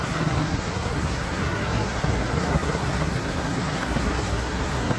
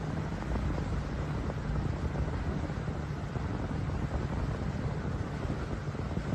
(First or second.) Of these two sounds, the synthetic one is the first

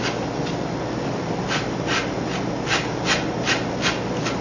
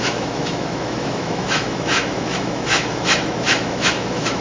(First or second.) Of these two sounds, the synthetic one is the second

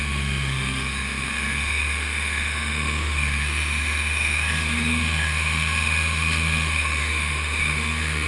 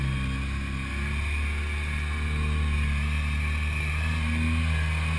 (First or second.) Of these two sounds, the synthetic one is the first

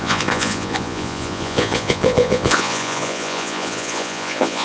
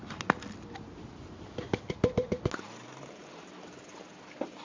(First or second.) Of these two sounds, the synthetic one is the first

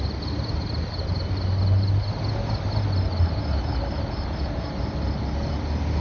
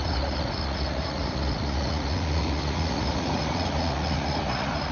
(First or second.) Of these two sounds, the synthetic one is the second